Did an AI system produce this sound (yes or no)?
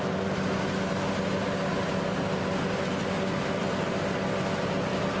no